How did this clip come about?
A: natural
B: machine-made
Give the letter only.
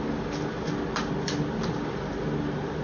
A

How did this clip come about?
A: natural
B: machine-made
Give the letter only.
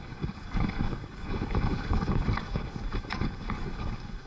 B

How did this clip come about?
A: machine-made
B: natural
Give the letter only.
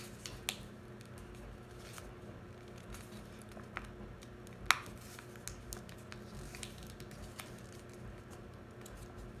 B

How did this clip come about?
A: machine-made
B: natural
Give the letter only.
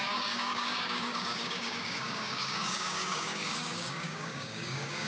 A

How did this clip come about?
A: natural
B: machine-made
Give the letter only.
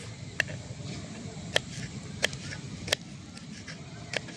A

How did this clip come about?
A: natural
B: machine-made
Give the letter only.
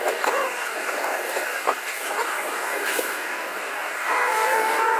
B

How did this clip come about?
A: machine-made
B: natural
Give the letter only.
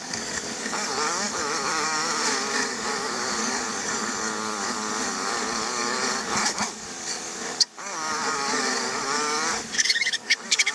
A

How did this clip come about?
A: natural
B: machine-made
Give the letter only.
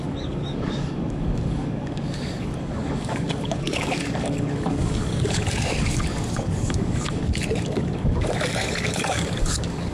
B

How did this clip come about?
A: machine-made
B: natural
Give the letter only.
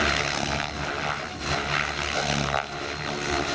B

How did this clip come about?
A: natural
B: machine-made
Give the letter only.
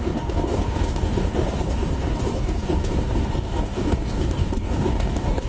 B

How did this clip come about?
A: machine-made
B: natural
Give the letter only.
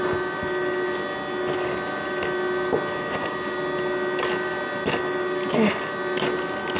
B